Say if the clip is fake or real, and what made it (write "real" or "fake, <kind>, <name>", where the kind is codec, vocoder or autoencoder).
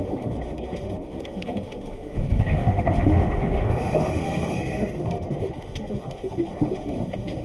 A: fake, autoencoder, DAC-VAE